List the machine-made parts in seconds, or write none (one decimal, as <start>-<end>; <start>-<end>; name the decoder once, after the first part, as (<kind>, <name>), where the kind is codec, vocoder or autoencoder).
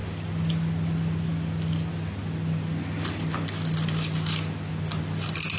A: none